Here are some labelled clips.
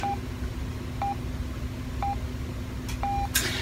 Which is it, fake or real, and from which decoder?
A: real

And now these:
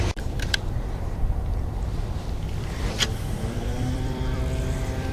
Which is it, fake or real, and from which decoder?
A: fake, vocoder, BigVGAN v2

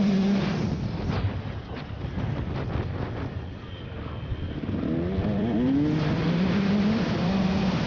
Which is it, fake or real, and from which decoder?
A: fake, vocoder, BigVGAN v2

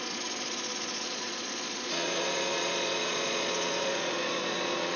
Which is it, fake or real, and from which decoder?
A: fake, vocoder, Vocos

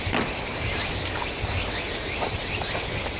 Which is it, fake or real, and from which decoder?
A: real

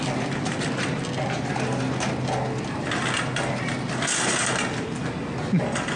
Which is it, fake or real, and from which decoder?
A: real